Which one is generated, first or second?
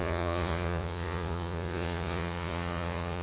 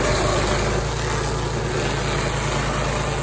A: first